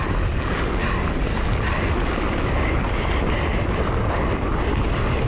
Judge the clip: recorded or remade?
recorded